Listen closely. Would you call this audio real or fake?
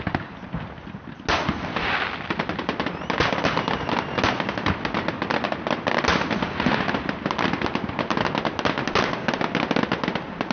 real